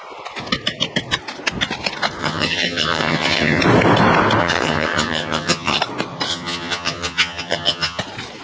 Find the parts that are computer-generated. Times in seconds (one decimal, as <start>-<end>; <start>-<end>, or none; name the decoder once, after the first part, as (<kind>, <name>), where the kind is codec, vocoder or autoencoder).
2.2-3.6 (vocoder, HiFi-GAN); 4.4-5.8; 6.3-8.0